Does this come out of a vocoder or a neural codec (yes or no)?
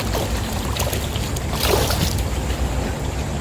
no